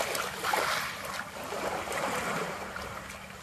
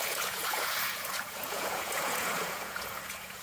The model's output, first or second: second